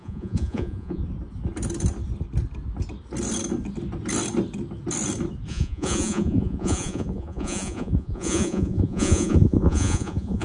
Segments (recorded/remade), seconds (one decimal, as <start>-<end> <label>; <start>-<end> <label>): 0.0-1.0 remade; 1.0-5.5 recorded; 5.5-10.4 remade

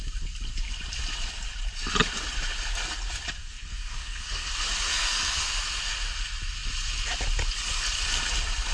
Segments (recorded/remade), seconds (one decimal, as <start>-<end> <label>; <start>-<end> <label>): 0.0-3.4 recorded; 3.4-4.5 remade; 4.5-4.9 recorded; 4.9-5.4 remade; 5.4-8.7 recorded

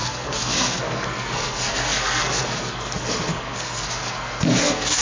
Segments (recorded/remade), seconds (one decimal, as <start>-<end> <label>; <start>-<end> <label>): 0.0-5.0 remade